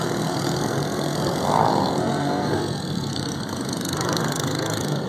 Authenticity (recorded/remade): remade